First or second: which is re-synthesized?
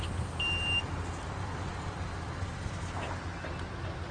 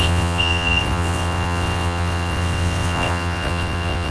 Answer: second